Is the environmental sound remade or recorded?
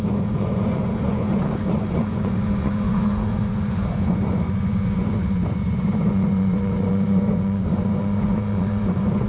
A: remade